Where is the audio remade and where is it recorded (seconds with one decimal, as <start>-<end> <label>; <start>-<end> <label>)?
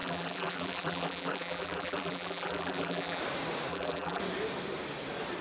0.0-3.2 remade; 3.2-3.7 recorded; 3.7-4.2 remade; 4.2-5.4 recorded